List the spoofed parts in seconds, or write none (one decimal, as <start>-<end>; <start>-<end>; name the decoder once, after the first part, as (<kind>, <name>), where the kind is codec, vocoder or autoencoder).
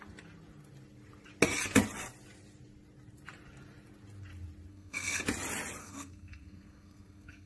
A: 4.7-5.2 (codec, SNAC); 5.8-7.5